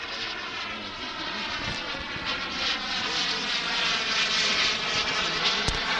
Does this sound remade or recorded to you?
recorded